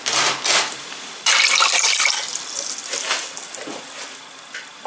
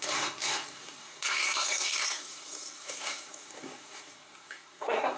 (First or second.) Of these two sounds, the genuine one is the first